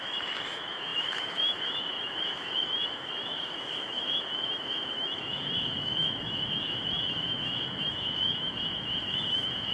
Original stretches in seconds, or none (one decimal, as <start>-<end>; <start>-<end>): none